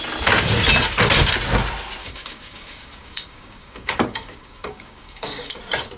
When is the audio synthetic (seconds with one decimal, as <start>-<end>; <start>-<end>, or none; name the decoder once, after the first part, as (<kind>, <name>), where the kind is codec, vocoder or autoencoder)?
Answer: 2.0-5.6 (codec, DAC)

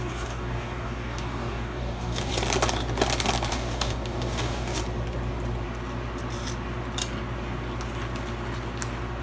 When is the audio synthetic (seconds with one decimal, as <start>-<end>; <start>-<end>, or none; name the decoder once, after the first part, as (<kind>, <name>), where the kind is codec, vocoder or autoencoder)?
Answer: 0.0-2.3 (codec, DAC); 3.5-4.8